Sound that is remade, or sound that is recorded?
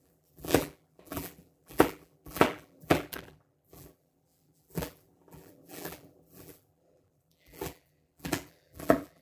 remade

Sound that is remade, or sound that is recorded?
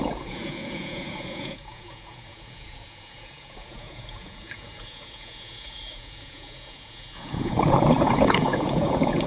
remade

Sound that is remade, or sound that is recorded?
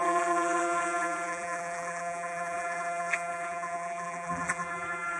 remade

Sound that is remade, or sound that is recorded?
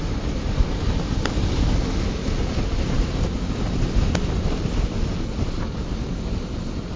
recorded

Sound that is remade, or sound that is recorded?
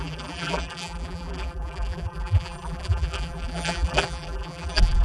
remade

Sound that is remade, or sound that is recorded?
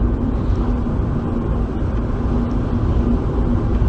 recorded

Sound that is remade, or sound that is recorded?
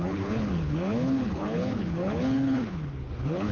remade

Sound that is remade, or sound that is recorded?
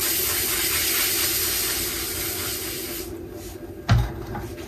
recorded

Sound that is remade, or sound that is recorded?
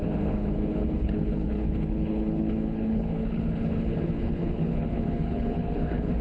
remade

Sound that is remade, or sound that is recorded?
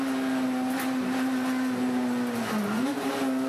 recorded